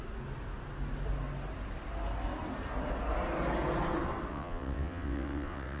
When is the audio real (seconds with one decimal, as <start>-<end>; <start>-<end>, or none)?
0.0-4.3